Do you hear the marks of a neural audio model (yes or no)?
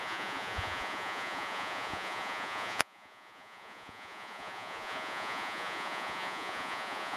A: yes